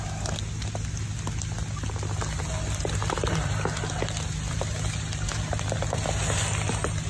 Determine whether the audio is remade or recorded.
recorded